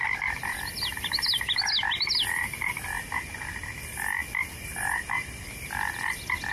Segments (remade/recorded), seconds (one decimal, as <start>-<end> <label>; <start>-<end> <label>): 0.0-6.5 recorded